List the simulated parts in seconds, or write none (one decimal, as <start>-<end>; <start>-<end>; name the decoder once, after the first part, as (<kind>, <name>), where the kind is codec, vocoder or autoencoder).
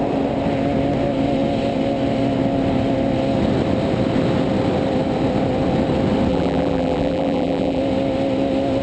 6.3-7.8 (vocoder, BigVGAN v2)